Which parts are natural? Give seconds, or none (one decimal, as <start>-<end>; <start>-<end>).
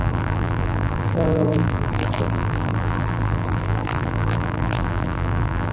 none